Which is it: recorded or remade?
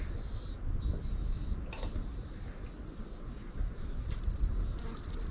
recorded